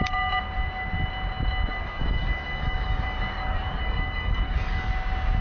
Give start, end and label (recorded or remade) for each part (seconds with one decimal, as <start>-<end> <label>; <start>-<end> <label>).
0.0-1.7 recorded; 1.7-4.9 remade; 4.9-5.4 recorded